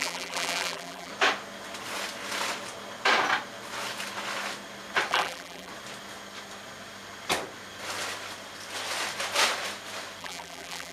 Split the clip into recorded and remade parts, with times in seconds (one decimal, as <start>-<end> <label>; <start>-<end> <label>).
0.0-1.1 remade; 1.1-5.1 recorded; 5.1-5.7 remade; 5.7-10.2 recorded; 10.2-10.9 remade